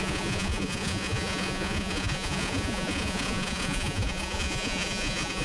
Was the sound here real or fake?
fake